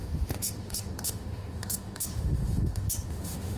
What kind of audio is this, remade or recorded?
remade